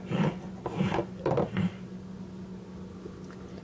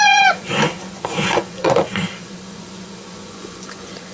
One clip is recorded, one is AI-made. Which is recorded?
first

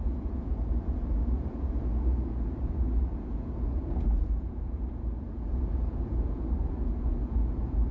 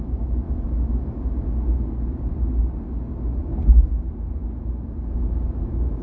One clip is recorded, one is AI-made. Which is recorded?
second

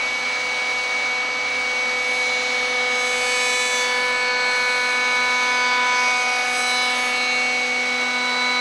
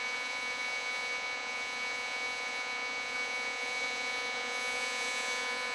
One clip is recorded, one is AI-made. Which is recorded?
first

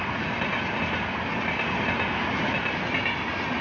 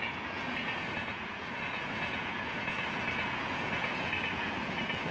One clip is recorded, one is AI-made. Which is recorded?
first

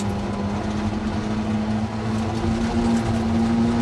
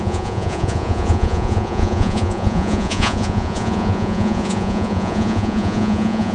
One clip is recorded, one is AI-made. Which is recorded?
first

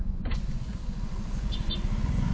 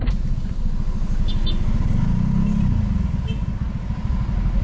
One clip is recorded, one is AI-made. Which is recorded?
second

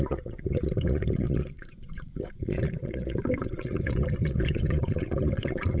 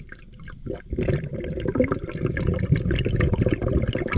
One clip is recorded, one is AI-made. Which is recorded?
second